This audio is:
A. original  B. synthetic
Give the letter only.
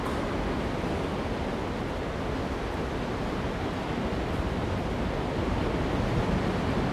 A